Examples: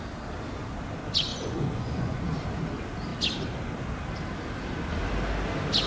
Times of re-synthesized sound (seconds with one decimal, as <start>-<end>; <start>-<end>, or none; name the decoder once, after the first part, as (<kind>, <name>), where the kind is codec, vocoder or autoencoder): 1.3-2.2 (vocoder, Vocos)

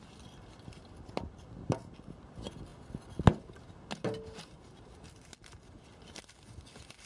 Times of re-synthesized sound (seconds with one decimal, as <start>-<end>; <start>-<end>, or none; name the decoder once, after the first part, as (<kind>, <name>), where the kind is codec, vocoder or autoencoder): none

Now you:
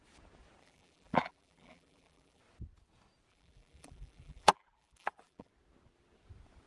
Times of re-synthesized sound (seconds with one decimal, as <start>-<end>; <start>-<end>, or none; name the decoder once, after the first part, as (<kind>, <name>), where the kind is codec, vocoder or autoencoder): 0.6-2.4 (vocoder, BigVGAN v2); 3.3-5.5

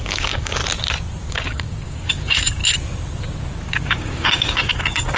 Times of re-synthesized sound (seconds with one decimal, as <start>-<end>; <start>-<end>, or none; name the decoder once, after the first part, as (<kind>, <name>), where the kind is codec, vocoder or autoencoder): 0.0-0.6 (codec, DAC); 1.3-2.6; 3.6-5.2